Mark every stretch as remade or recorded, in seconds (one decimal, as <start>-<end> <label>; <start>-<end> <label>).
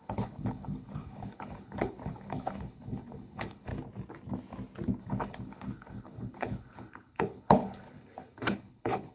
0.0-3.7 remade; 3.7-5.0 recorded; 5.0-9.1 remade